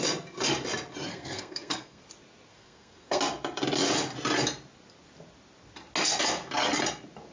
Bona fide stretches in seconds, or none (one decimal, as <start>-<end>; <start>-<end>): 0.0-1.1; 2.0-2.5; 3.2-7.3